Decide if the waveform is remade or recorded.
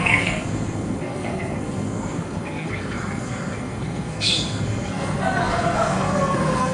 remade